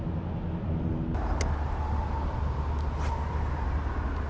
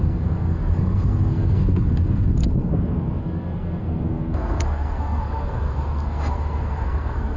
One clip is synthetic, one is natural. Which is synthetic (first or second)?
second